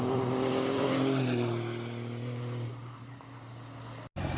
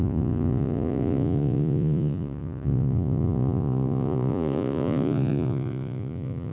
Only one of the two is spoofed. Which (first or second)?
second